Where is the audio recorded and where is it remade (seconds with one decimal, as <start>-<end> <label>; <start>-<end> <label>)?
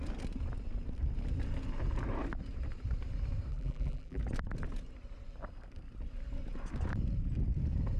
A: 0.0-3.5 recorded; 3.5-4.2 remade; 4.2-8.0 recorded